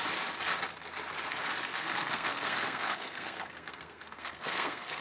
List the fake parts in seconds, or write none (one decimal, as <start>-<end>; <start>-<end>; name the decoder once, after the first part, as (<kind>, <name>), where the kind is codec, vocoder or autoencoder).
1.7-5.0 (codec, SNAC)

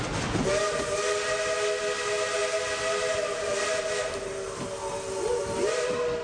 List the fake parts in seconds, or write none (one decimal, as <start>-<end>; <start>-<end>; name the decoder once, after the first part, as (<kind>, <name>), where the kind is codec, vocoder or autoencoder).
none

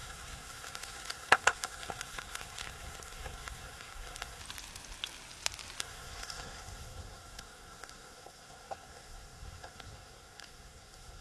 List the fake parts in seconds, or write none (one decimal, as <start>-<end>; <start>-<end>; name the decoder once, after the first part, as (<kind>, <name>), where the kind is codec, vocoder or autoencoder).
0.0-4.4 (codec, SNAC); 5.8-11.2

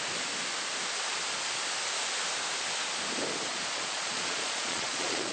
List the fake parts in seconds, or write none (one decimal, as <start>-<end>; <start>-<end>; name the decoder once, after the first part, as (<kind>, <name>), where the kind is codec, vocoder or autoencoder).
3.5-5.3 (vocoder, Vocos)

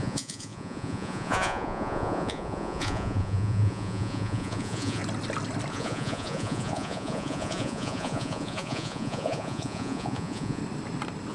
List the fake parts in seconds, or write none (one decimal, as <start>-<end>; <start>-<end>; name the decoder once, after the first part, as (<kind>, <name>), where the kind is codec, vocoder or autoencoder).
0.0-5.0 (vocoder, Vocos); 5.7-10.6

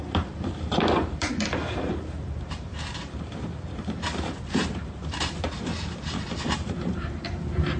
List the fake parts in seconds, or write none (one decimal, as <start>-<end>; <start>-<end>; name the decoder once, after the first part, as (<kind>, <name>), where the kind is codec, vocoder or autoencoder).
0.0-5.7 (vocoder, BigVGAN v2); 6.4-7.8